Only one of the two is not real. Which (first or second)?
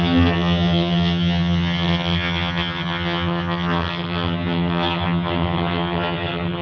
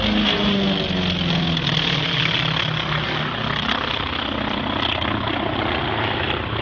first